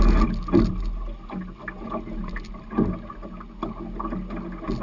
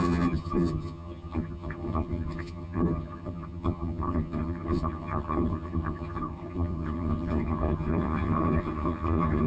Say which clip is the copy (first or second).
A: second